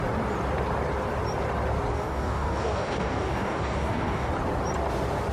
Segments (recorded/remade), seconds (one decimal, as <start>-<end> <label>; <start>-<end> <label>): 0.0-1.9 recorded; 1.9-4.3 remade; 4.3-5.3 recorded